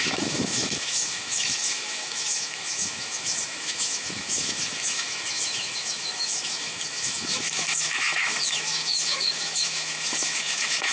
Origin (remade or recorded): remade